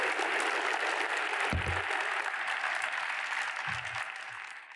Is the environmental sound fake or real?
real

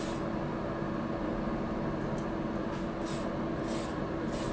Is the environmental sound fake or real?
real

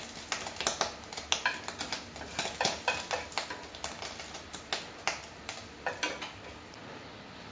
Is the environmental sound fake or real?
real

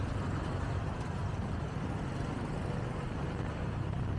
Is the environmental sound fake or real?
real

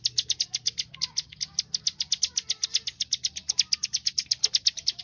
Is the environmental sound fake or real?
real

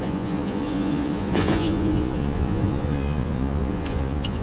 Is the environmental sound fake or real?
fake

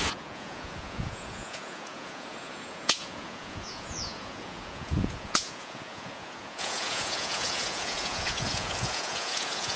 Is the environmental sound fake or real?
fake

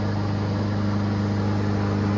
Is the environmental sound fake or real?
real